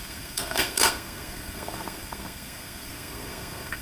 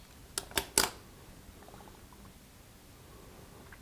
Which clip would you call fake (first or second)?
first